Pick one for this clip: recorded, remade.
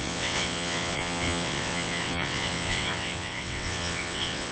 remade